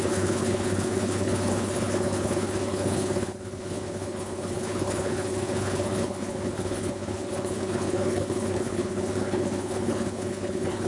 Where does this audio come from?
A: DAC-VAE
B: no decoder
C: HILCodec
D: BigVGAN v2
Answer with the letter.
C